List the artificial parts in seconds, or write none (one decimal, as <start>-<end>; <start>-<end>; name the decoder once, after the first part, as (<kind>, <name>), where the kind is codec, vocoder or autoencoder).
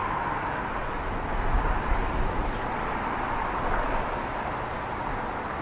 none